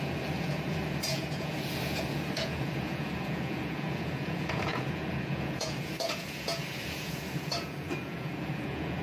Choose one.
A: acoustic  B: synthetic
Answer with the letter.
B